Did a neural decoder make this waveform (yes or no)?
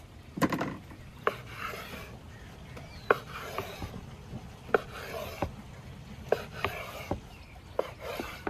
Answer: no